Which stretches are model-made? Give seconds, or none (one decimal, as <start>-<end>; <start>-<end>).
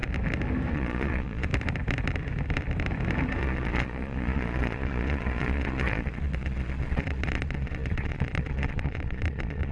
0.7-1.5; 3.4-9.7